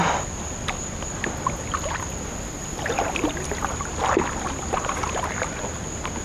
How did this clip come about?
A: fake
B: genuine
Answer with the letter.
B